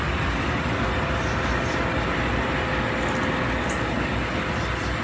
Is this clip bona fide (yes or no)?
yes